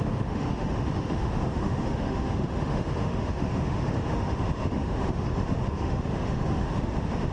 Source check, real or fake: fake